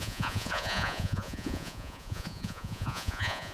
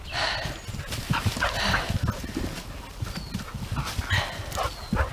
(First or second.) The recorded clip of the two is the second